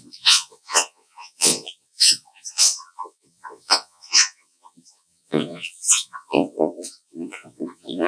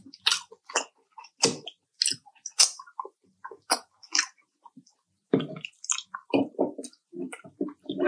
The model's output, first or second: first